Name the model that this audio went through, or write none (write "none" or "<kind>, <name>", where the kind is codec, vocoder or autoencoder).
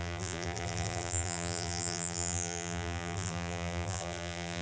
vocoder, BigVGAN v2